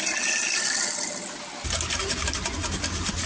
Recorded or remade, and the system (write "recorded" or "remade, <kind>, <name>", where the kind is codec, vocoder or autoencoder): recorded